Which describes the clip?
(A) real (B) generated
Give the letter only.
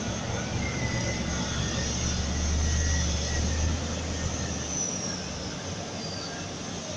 A